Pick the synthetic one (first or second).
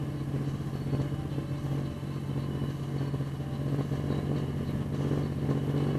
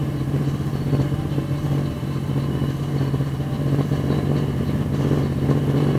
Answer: second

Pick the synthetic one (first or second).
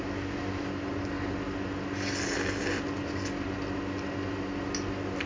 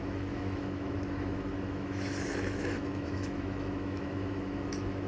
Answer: second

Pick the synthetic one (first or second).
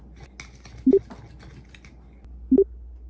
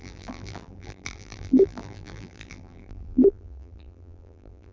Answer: second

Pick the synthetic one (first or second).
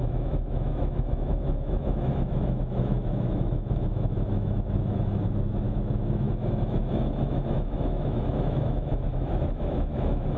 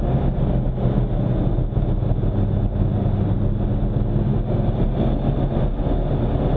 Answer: first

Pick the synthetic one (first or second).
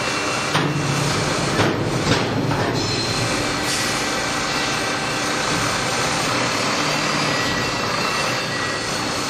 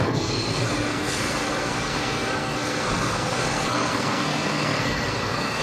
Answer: second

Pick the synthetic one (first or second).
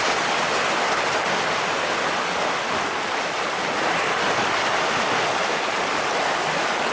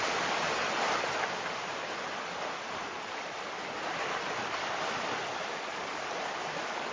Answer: second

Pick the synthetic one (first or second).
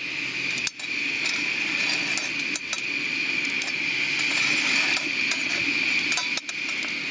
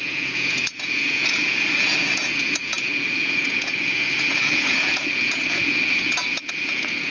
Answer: second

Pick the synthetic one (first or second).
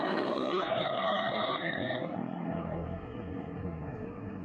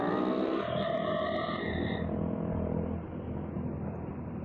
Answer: first